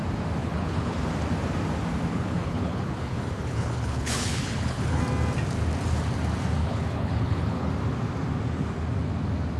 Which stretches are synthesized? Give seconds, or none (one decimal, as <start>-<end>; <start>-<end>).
0.4-1.0; 2.1-5.0; 6.6-7.7